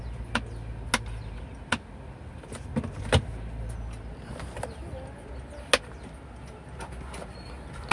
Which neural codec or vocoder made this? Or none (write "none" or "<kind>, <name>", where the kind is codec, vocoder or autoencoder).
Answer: none